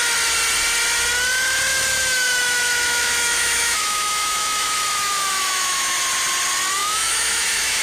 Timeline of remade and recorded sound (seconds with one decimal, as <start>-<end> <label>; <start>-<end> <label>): 0.0-1.7 recorded; 1.7-6.0 remade; 6.0-6.8 recorded; 6.8-7.8 remade